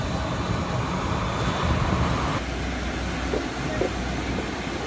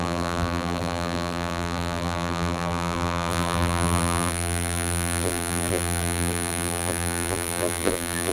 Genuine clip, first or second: first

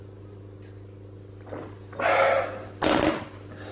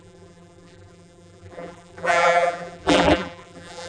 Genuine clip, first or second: first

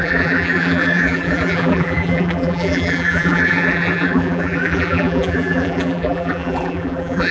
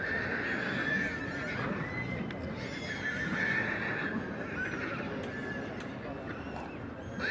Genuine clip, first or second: second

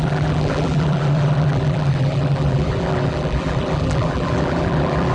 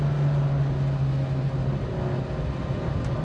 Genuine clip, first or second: second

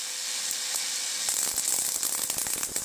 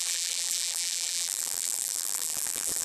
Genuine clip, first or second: first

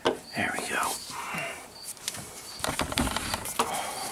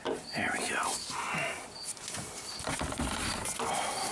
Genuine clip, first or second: second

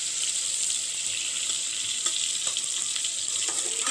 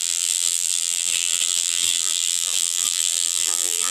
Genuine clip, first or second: first